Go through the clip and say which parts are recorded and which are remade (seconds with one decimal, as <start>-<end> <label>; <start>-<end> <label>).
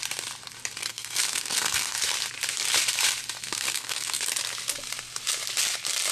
0.0-0.8 recorded; 0.8-2.0 remade; 2.0-3.4 recorded; 3.4-4.3 remade; 4.3-6.1 recorded